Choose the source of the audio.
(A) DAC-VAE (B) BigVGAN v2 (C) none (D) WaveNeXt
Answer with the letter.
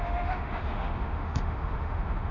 A